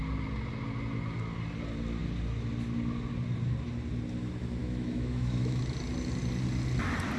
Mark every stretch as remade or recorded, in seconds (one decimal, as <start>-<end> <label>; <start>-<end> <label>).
0.0-4.6 recorded; 4.6-5.6 remade; 5.6-7.2 recorded

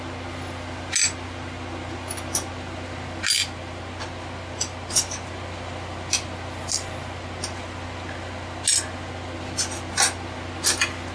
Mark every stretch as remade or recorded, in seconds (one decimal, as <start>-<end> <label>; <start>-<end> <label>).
0.0-11.1 recorded

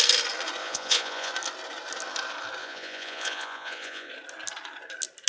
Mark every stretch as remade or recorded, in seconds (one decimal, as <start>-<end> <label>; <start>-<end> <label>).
0.0-0.6 recorded; 0.6-1.3 remade; 1.3-2.6 recorded; 2.6-4.1 remade; 4.1-5.3 recorded

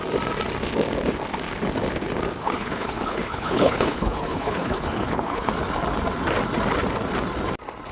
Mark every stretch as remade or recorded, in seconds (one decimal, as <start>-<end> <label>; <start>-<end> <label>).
0.0-2.4 recorded; 2.4-5.5 remade; 5.5-7.9 recorded